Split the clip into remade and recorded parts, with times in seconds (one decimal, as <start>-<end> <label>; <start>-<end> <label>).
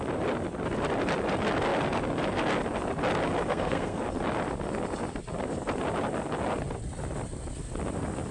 0.0-3.5 recorded; 3.5-4.0 remade; 4.0-8.3 recorded